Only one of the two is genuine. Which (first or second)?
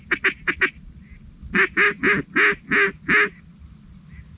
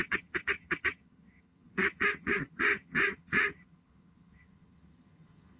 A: first